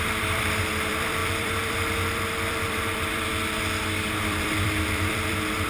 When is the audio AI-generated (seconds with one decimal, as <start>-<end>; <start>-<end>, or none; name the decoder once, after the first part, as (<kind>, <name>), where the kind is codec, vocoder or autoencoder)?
0.0-3.3 (vocoder, BigVGAN v2); 4.2-5.7